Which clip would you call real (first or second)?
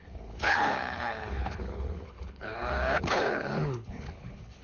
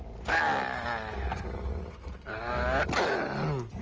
second